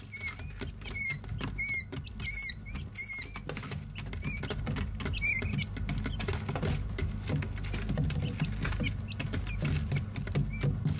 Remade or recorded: recorded